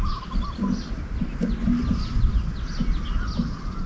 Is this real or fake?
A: real